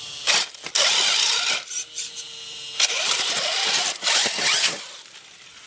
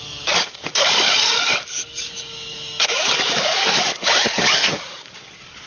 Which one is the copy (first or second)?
second